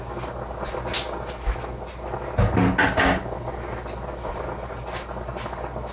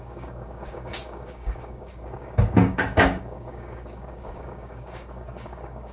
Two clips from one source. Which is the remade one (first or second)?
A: second